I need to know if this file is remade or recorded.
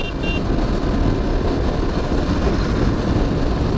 recorded